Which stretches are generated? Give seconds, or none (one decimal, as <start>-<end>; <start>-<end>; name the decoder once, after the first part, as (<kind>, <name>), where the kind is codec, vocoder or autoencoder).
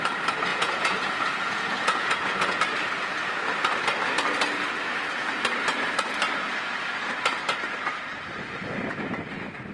0.5-2.6 (vocoder, Vocos)